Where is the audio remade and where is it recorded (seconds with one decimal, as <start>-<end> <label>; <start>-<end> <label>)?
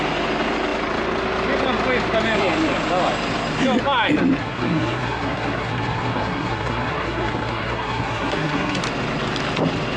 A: 0.0-4.4 recorded; 4.4-8.8 remade; 8.8-10.0 recorded